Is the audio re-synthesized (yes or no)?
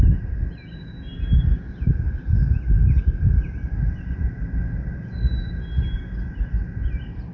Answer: no